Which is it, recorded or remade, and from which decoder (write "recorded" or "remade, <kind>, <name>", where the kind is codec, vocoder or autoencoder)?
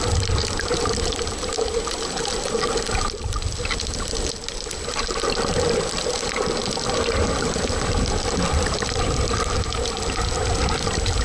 recorded